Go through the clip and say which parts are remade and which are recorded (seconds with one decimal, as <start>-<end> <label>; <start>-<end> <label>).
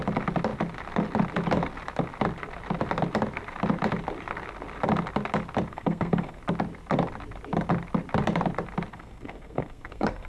0.0-5.7 recorded; 5.7-6.4 remade; 6.4-8.9 recorded; 8.9-10.3 remade